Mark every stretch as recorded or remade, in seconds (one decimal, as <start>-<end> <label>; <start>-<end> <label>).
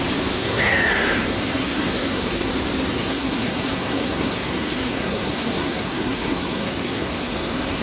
0.0-0.4 recorded; 0.4-2.5 remade; 2.5-2.9 recorded; 2.9-7.8 remade